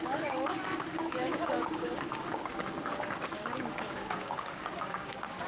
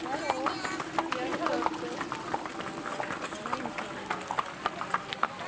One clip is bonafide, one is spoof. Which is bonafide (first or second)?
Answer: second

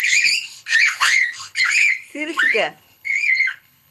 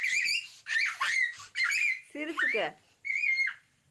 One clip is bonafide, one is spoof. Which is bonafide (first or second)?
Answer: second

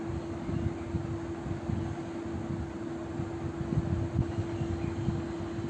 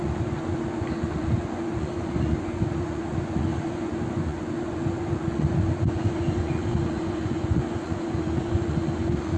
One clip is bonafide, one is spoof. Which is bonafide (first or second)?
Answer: first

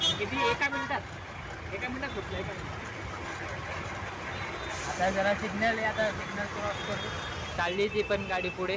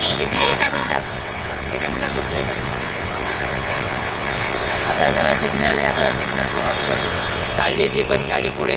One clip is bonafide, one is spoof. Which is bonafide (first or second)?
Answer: first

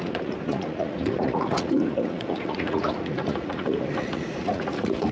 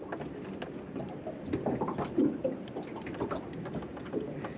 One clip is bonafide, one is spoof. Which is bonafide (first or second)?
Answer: second